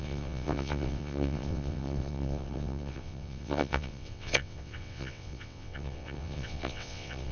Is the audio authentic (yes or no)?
no